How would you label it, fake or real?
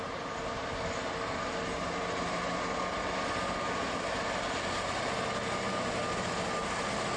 real